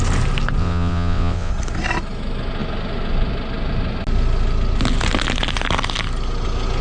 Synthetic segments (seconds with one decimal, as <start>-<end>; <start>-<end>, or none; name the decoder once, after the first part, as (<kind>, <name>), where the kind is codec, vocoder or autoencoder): 0.6-1.5 (vocoder, WaveNeXt)